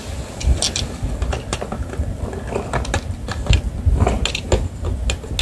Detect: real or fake real